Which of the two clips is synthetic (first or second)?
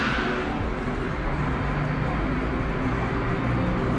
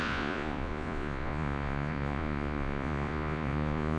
second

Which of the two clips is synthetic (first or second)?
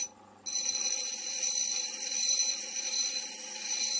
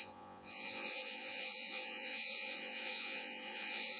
second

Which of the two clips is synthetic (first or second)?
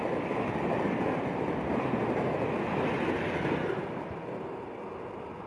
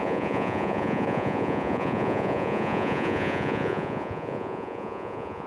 second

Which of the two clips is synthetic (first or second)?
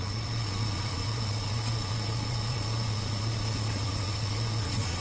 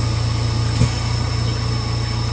first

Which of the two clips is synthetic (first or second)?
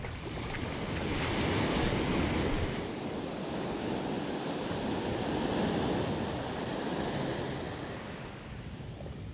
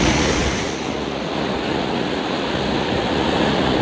second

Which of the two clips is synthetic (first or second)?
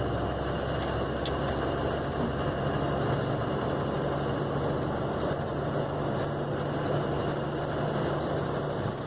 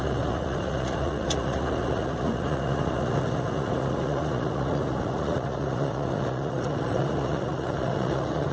second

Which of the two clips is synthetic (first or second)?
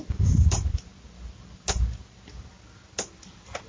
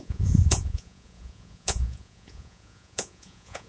second